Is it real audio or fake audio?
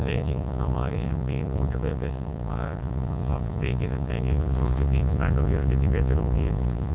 fake